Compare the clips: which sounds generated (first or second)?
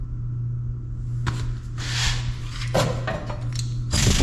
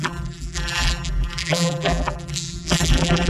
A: second